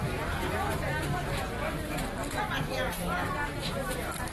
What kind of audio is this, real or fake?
real